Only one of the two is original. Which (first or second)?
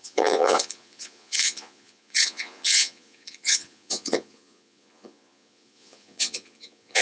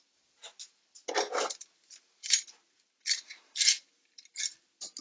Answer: second